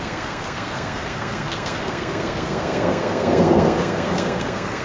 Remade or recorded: remade